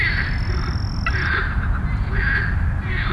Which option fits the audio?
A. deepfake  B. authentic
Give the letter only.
B